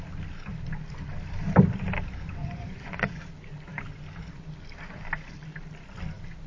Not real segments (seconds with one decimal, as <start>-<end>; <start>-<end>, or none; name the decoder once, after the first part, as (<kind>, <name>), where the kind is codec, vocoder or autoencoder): 2.4-3.2 (vocoder, Vocos)